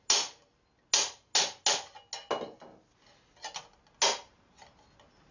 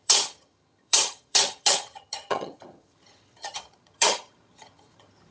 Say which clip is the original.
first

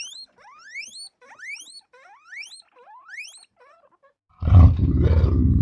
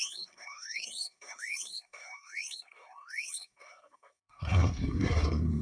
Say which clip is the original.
first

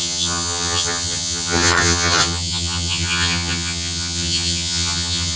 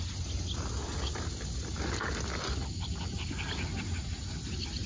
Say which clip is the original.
second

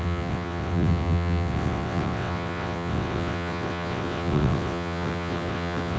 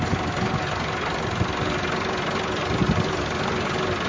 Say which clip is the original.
second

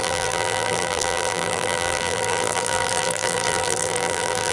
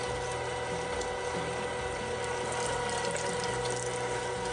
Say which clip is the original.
second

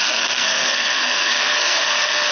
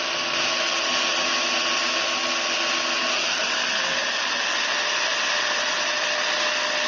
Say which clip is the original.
second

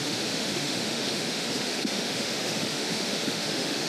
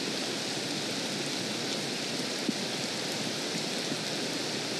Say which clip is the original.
second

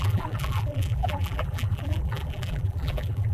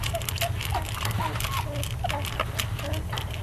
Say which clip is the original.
second